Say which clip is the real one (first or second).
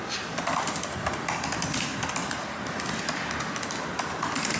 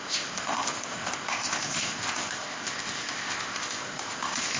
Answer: first